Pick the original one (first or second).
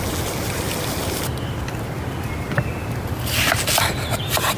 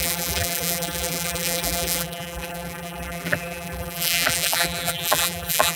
first